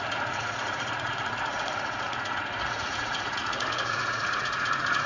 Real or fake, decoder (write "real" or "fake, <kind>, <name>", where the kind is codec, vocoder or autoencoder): fake, vocoder, Vocos